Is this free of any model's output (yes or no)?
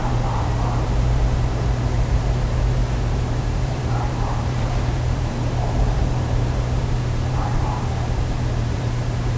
no